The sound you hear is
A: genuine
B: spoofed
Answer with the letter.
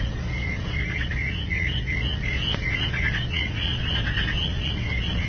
B